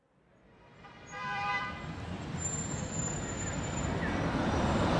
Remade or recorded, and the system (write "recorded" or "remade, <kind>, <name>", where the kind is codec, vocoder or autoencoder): remade, vocoder, BigVGAN v2